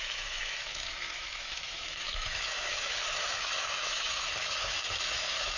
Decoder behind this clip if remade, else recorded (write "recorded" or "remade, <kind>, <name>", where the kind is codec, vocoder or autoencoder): remade, autoencoder, DAC-VAE